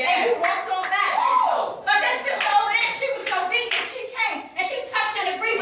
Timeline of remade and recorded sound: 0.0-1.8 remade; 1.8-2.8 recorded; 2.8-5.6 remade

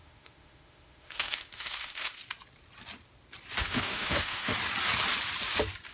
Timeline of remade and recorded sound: 0.0-2.2 remade; 2.2-3.6 recorded; 3.6-4.5 remade; 4.5-5.9 recorded

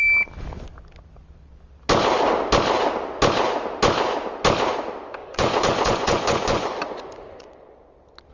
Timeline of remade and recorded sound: 0.0-5.2 recorded; 5.2-7.8 remade; 7.8-8.3 recorded

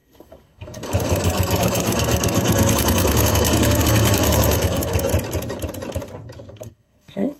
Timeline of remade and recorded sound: 0.0-5.1 remade; 5.1-6.5 recorded; 6.5-7.4 remade

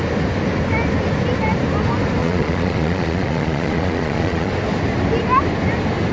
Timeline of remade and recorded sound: 0.0-2.2 recorded; 2.2-4.5 remade; 4.5-6.1 recorded

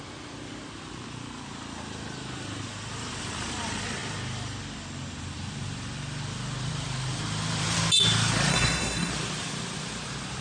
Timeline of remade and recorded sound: 0.0-8.5 recorded; 8.5-9.1 remade; 9.1-10.4 recorded

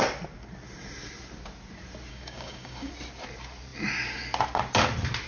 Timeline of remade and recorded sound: 0.0-2.1 recorded; 2.1-2.9 remade; 2.9-5.3 recorded

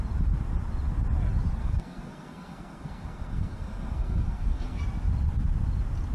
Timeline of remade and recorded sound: 0.0-1.6 recorded; 1.6-4.8 remade; 4.8-6.1 recorded